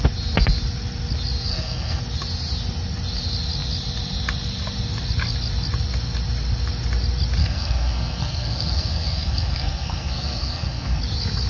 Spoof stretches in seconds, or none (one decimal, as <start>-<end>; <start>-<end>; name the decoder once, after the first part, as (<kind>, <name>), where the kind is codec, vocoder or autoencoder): 1.5-2.0 (codec, SNAC); 7.4-11.0